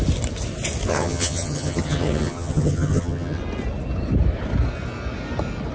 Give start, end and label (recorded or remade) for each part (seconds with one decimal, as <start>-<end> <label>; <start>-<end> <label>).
0.0-0.9 recorded; 0.9-3.4 remade; 3.4-5.7 recorded